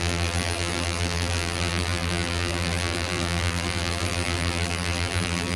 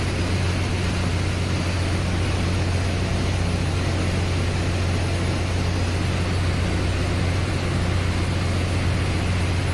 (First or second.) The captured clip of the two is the second